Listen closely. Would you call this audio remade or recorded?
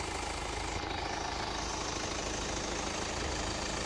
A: recorded